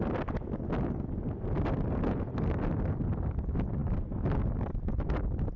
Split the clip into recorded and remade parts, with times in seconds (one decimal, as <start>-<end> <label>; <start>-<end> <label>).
0.0-5.6 recorded